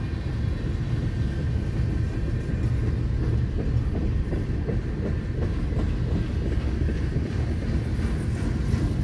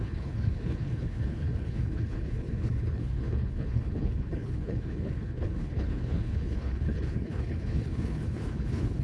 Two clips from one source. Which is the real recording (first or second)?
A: first